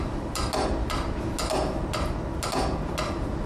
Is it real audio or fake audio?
real